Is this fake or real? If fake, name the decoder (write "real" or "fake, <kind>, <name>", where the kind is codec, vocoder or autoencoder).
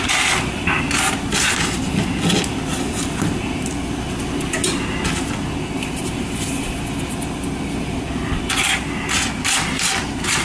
real